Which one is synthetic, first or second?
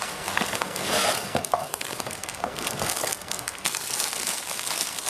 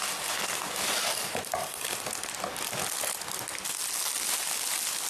first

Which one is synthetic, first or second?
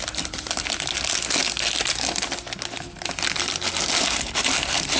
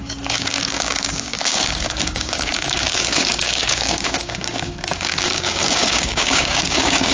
second